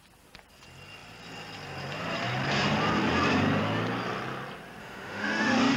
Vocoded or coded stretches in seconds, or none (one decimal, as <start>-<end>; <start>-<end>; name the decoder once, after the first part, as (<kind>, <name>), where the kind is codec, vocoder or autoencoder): 4.8-5.8 (autoencoder, DAC-VAE)